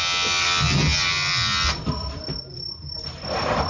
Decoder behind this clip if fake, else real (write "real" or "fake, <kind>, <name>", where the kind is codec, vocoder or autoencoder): real